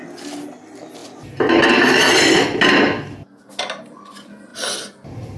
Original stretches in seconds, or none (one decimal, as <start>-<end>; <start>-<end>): 0.0-5.4